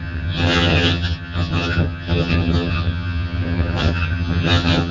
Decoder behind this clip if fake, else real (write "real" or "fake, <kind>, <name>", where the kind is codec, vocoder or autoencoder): fake, vocoder, HiFi-GAN